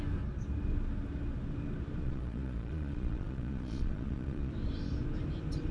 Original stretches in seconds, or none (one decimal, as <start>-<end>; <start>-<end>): 0.0-2.0; 4.5-5.7